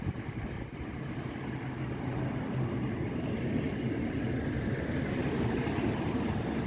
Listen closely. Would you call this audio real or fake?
real